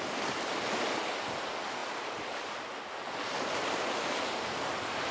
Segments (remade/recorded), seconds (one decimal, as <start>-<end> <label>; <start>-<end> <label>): 0.0-5.1 recorded